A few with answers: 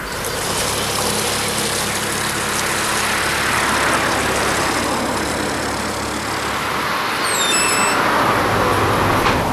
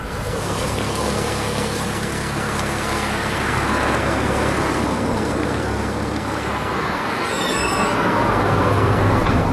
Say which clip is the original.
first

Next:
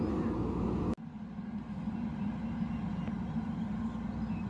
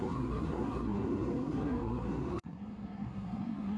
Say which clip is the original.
first